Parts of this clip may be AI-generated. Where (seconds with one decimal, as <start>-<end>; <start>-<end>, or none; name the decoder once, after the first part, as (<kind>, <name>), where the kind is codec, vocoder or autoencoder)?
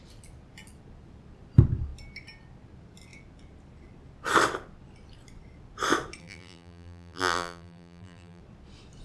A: 6.2-8.4 (vocoder, BigVGAN v2)